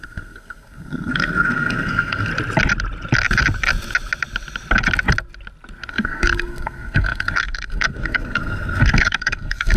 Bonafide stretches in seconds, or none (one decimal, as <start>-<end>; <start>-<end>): 2.3-5.9